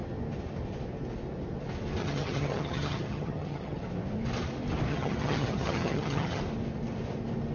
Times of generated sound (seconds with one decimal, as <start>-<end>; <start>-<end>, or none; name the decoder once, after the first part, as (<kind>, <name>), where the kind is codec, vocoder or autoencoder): 2.0-3.8 (vocoder, HiFi-GAN); 4.9-6.4